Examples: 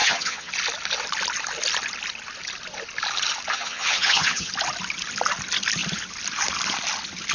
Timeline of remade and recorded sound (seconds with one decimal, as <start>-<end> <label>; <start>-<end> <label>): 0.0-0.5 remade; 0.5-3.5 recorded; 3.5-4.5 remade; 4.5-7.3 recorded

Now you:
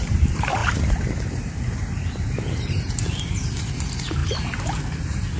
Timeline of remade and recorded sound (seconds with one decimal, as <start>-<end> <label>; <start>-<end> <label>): 0.0-4.2 remade; 4.2-5.0 recorded; 5.0-5.4 remade

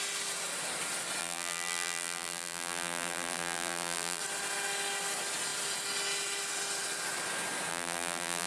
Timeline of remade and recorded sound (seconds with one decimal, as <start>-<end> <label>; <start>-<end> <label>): 0.0-1.2 recorded; 1.2-4.2 remade; 4.2-7.7 recorded; 7.7-8.5 remade

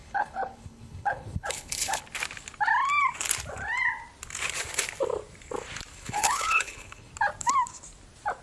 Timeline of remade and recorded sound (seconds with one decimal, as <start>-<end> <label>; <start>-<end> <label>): 0.0-2.0 remade; 2.0-5.9 recorded; 5.9-7.1 remade; 7.1-8.4 recorded